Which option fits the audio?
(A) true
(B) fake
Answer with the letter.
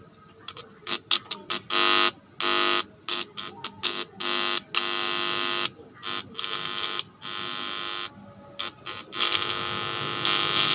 A